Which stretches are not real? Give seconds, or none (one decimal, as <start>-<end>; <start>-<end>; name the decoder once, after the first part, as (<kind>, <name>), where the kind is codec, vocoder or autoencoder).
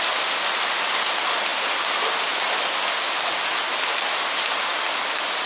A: none